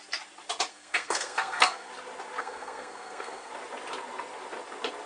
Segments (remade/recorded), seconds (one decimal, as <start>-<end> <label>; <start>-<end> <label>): 0.0-0.7 recorded; 0.7-1.9 remade; 1.9-2.4 recorded; 2.4-3.5 remade; 3.5-5.1 recorded